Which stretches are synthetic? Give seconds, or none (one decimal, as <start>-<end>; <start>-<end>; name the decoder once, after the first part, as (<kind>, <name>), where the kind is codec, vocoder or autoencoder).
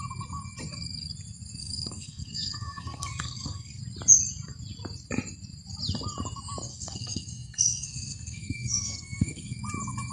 1.6-3.8 (codec, SNAC); 6.7-9.6